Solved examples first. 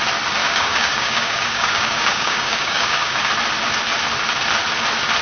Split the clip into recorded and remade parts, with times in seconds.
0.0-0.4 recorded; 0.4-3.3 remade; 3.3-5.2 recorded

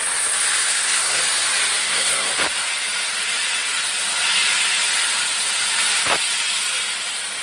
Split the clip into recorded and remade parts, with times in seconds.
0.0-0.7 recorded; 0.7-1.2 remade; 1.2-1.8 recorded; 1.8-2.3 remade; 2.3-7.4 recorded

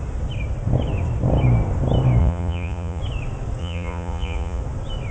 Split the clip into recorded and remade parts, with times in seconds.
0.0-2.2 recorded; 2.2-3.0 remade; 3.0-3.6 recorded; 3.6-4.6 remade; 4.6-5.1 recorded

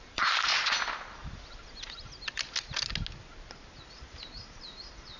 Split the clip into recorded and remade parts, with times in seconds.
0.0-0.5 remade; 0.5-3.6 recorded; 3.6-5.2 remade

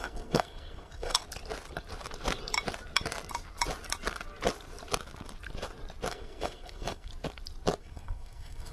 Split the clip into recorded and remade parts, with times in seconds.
0.0-1.2 remade; 1.2-6.1 recorded; 6.1-7.1 remade; 7.1-7.8 recorded; 7.8-8.7 remade